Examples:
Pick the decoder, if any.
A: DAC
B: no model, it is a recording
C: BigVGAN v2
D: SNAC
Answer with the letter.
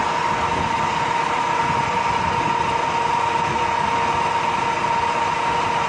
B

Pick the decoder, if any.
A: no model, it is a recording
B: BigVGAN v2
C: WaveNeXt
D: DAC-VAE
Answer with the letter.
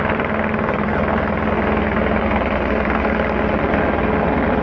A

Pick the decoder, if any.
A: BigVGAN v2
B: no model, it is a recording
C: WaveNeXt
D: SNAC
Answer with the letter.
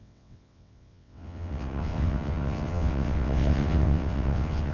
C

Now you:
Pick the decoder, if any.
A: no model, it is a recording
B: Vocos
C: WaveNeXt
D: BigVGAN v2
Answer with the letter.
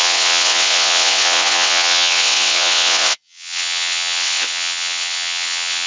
C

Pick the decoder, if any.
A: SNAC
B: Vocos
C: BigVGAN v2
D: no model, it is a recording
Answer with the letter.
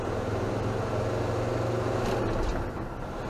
D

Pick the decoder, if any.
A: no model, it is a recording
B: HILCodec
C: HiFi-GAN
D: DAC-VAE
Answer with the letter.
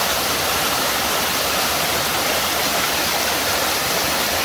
A